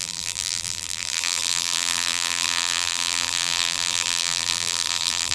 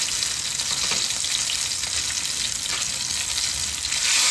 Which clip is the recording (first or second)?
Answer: second